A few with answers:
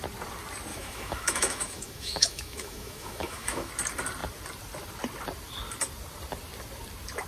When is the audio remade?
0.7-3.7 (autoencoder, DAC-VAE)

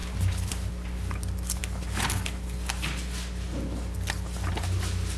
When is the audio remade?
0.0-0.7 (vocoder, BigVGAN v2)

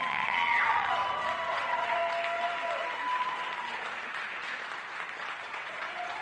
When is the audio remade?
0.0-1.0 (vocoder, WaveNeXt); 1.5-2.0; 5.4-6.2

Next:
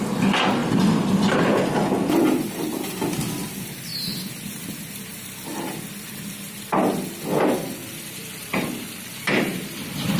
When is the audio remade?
0.6-1.4 (vocoder, BigVGAN v2); 3.9-4.8; 7.8-10.2